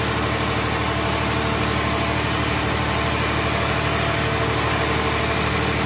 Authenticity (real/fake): real